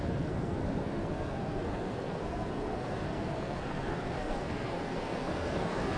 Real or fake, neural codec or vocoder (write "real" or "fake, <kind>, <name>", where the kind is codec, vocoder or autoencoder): fake, codec, SNAC